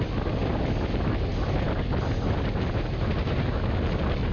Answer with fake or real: real